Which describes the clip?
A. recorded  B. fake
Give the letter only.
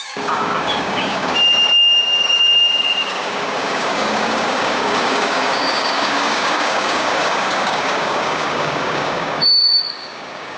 B